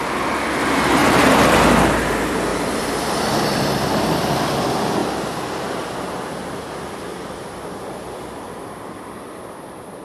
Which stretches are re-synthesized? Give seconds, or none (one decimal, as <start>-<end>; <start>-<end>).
1.0-1.6; 2.5-3.1